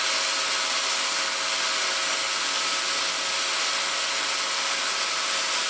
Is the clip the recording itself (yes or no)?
yes